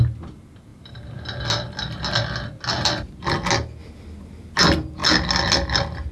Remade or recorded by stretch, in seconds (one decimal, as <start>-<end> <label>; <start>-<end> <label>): 0.0-6.1 recorded